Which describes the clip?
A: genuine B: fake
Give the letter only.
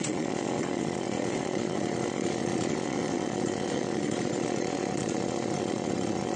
B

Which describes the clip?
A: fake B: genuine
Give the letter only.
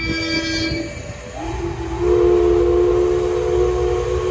B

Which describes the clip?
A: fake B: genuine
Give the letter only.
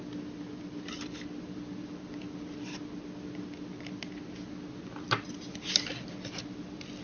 B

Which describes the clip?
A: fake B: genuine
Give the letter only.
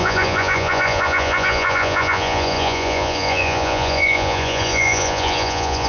A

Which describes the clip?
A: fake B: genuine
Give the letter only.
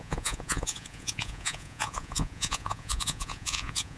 A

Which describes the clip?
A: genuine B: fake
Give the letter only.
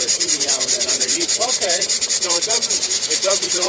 B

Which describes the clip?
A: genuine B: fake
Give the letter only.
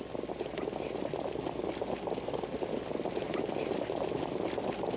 A